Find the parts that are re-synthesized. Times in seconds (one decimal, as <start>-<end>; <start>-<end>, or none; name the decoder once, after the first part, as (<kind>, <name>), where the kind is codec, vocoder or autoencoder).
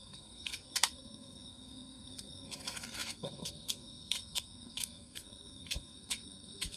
0.0-6.8 (codec, SNAC)